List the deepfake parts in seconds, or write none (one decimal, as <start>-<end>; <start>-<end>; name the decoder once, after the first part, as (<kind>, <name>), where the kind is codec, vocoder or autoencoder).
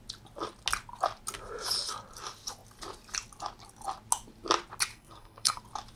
4.9-5.6 (codec, SNAC)